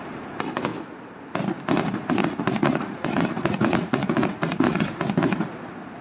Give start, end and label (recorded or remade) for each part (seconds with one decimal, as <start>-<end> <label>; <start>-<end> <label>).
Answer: 0.0-2.2 recorded; 2.2-4.8 remade; 4.8-6.0 recorded